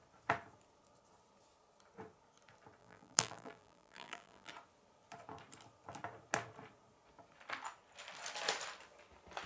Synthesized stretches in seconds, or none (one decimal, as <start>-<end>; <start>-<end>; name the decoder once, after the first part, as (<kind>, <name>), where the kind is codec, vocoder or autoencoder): 2.8-4.5 (vocoder, BigVGAN v2)